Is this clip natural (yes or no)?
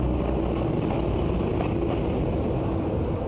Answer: yes